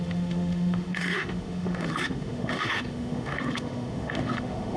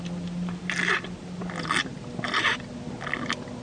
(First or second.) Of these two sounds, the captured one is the second